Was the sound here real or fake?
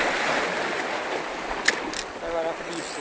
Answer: real